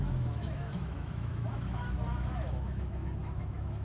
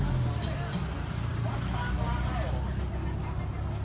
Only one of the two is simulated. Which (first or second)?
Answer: first